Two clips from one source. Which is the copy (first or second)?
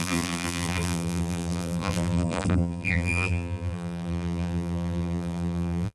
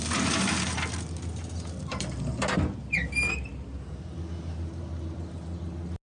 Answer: first